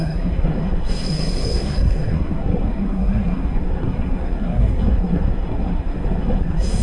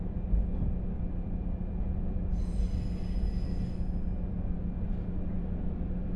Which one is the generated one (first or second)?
first